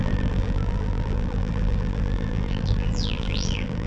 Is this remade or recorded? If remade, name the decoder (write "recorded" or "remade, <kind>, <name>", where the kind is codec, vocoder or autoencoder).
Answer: remade, vocoder, BigVGAN v2